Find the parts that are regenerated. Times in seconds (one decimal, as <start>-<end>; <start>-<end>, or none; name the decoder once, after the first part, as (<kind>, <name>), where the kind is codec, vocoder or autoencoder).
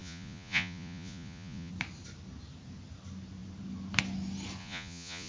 0.0-1.7 (vocoder, Vocos); 4.6-5.3